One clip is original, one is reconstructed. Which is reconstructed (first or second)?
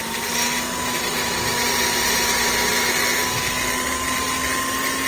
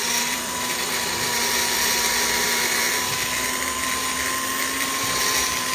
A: second